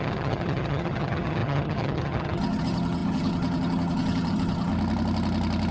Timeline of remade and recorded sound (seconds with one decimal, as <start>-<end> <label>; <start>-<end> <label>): 0.0-4.7 remade; 4.7-5.7 recorded